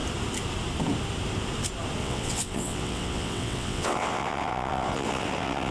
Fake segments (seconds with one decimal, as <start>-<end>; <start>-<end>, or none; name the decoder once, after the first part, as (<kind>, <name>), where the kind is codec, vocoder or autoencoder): 2.0-5.7 (vocoder, WaveNeXt)